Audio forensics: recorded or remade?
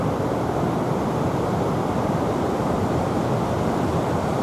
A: recorded